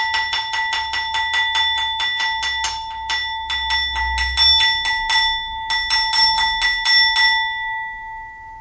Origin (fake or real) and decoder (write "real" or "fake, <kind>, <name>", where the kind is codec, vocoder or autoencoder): real